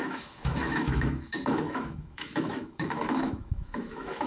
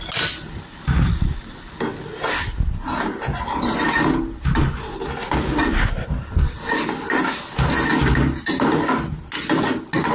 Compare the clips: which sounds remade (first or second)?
first